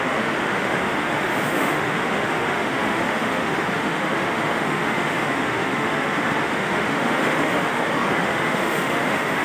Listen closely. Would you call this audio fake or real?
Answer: fake